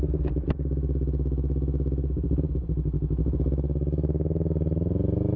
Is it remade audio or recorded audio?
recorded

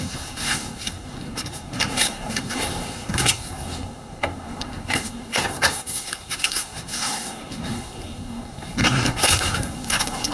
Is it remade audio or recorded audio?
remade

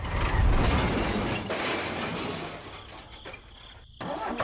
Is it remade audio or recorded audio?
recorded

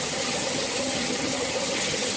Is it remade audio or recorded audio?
remade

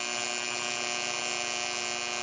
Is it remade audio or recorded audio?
recorded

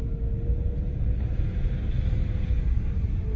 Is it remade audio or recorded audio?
recorded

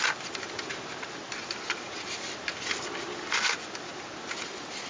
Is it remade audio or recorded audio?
recorded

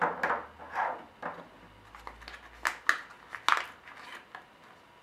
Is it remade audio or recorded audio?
recorded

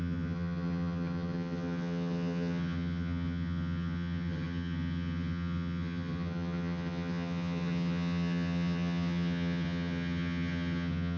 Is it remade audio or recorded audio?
remade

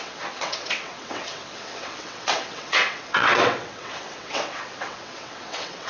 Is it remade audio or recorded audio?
remade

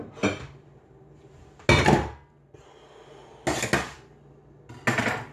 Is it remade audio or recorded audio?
recorded